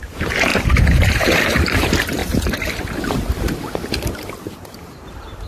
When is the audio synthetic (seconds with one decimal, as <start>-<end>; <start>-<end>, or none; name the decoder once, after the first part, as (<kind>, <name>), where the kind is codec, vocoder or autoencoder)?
0.0-2.2 (vocoder, BigVGAN v2); 4.5-5.5

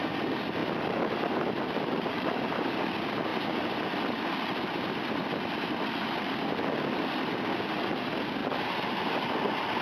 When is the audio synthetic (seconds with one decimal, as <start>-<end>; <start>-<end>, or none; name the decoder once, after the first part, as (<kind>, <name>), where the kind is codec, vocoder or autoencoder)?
0.6-2.3 (vocoder, BigVGAN v2); 8.4-8.9